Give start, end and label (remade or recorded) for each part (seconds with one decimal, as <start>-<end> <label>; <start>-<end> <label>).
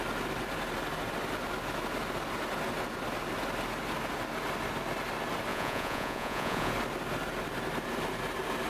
0.0-5.5 recorded; 5.5-6.7 remade; 6.7-8.7 recorded